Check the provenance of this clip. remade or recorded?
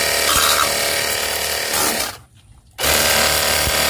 recorded